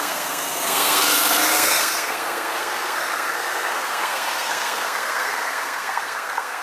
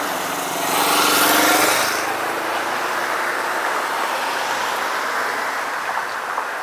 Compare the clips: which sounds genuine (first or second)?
second